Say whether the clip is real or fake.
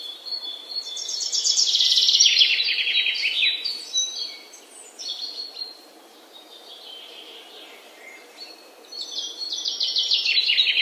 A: fake